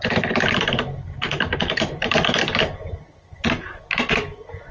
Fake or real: real